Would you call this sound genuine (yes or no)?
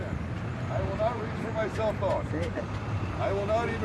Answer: yes